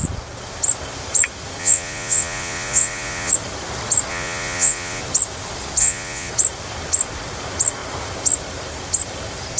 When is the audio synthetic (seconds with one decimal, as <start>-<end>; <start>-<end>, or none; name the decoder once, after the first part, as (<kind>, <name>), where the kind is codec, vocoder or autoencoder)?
1.6-3.3 (vocoder, Vocos); 4.1-5.0; 5.8-6.3